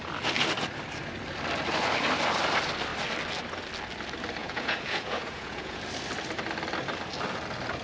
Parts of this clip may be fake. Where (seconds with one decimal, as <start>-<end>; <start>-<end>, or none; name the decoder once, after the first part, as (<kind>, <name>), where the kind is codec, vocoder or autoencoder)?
4.4-5.8 (vocoder, Vocos)